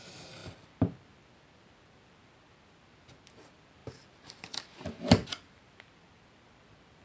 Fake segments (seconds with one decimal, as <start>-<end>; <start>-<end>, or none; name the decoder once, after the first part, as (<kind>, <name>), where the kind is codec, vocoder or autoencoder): none